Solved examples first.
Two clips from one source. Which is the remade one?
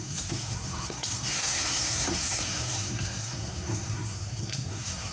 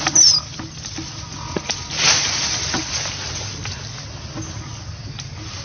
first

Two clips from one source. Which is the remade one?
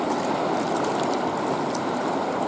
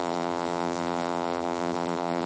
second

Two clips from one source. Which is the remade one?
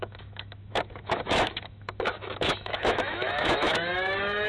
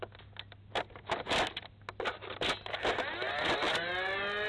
first